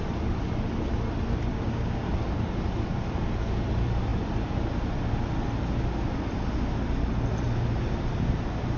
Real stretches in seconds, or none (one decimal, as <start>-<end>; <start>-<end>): 0.0-1.5; 2.1-8.8